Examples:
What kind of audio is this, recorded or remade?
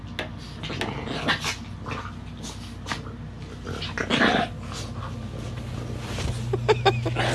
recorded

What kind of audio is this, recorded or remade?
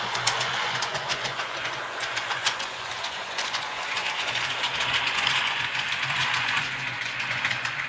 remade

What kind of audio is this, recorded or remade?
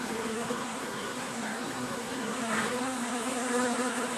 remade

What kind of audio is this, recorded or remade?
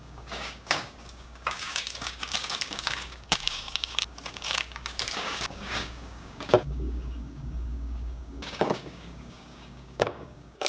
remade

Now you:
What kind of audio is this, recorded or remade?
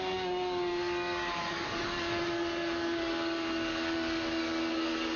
remade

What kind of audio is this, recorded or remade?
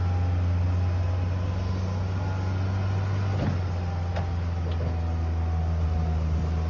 recorded